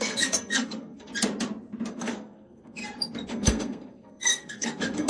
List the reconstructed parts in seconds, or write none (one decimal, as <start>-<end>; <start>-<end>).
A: 0.0-1.1; 1.9-2.8; 3.3-5.1